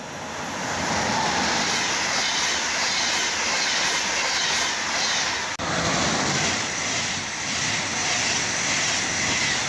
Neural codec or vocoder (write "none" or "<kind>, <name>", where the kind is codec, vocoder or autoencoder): none